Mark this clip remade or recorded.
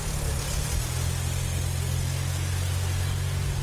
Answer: recorded